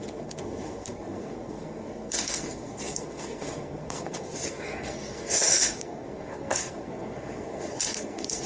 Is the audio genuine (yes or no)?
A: no